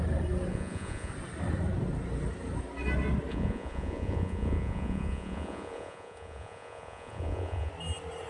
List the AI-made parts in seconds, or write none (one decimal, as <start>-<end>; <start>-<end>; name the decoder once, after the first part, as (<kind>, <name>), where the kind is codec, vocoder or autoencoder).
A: 0.5-1.1 (vocoder, Vocos); 3.3-7.7